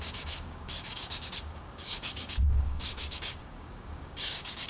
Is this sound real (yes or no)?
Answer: no